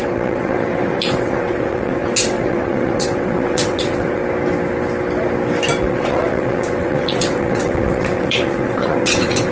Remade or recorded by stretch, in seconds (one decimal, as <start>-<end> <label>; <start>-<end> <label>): 0.0-4.2 remade; 4.2-5.8 recorded; 5.8-9.5 remade